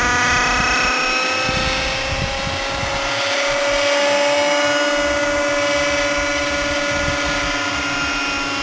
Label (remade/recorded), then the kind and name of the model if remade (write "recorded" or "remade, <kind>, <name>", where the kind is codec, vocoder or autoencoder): recorded